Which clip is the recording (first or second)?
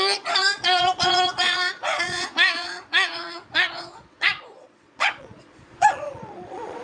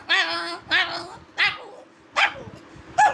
second